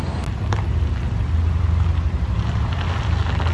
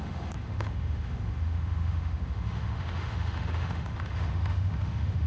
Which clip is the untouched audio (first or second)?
first